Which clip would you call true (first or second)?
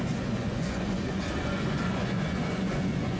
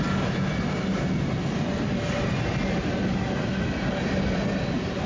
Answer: second